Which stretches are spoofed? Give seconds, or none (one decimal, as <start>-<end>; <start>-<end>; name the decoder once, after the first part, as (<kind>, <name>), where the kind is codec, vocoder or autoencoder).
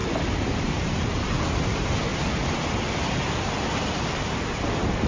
0.0-2.1 (vocoder, BigVGAN v2); 4.6-5.1